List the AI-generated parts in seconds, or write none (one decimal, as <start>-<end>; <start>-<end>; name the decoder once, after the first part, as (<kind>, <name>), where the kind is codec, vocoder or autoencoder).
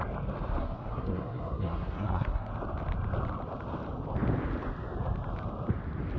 0.6-2.5 (codec, SNAC)